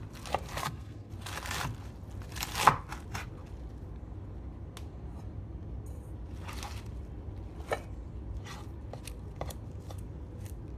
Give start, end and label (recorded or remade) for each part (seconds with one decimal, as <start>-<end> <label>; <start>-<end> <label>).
0.0-0.6 recorded; 0.6-1.1 remade; 1.1-10.8 recorded